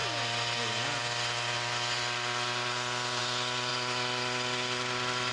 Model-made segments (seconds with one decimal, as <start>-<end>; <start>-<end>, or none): none